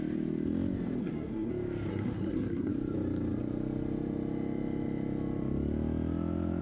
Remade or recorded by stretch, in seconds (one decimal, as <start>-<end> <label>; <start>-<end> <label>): 0.0-1.0 recorded; 1.0-1.5 remade; 1.5-1.9 recorded; 1.9-2.7 remade; 2.7-6.6 recorded